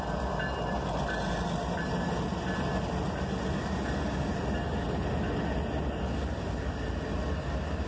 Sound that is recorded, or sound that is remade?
recorded